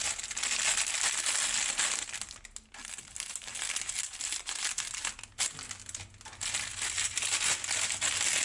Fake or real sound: real